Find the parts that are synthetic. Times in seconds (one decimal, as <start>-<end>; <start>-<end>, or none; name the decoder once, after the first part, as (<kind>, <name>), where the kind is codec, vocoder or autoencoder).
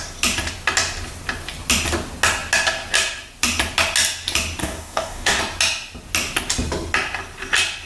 4.6-5.4 (codec, DAC)